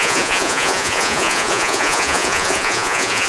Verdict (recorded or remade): remade